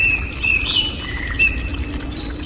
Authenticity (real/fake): real